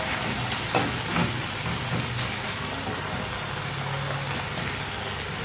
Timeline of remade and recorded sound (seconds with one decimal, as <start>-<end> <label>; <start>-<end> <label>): 0.0-1.2 recorded; 1.2-3.7 remade; 3.7-5.4 recorded